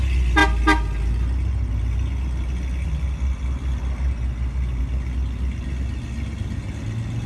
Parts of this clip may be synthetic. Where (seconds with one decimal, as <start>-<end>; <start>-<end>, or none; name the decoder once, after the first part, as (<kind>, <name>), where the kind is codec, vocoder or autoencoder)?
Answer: none